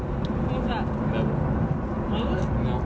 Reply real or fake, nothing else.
real